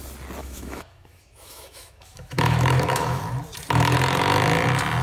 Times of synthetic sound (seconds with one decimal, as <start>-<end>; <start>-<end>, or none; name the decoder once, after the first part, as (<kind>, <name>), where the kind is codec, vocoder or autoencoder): 0.4-3.2 (autoencoder, DAC-VAE)